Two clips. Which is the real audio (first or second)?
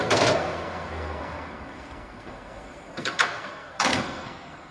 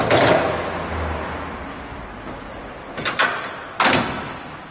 second